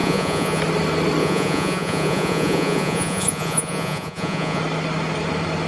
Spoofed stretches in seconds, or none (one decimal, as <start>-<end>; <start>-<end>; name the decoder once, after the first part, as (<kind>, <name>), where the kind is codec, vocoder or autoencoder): 0.0-0.6 (vocoder, Vocos); 1.2-4.6